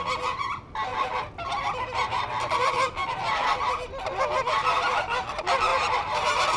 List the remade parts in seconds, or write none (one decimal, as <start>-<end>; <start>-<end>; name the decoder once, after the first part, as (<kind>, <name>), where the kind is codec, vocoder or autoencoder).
5.7-6.6 (vocoder, BigVGAN v2)